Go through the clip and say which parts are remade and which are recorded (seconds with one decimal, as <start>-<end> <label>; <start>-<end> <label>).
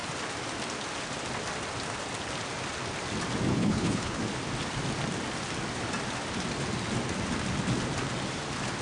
0.0-3.5 recorded; 3.5-4.2 remade; 4.2-8.8 recorded